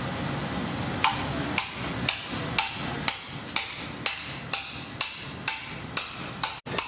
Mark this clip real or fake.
real